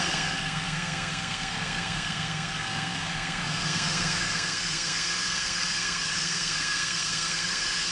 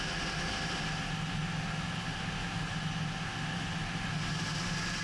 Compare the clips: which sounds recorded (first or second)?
second